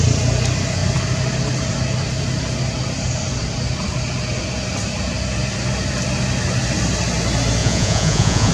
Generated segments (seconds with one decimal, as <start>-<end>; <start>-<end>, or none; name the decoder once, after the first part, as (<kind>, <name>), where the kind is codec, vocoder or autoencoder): 7.6-8.5 (vocoder, Vocos)